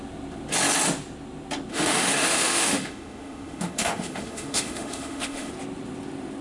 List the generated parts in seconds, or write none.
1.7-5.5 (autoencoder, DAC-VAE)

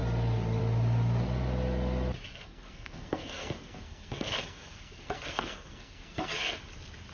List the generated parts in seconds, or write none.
2.3-6.6 (codec, SNAC)

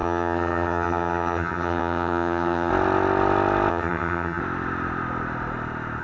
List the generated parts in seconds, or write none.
0.0-2.7 (vocoder, HiFi-GAN); 3.7-4.4